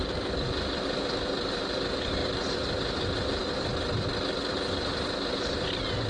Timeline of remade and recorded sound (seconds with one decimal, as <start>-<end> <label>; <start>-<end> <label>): 0.0-6.1 recorded